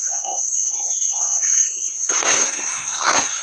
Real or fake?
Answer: fake